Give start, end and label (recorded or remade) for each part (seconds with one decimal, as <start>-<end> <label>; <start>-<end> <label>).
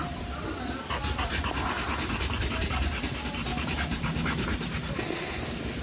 0.0-3.5 recorded; 3.5-5.1 remade; 5.1-5.8 recorded